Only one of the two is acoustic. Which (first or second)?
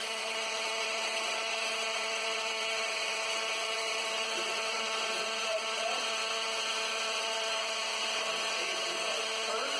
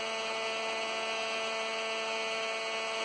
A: second